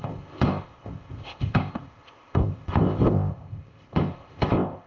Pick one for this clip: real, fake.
fake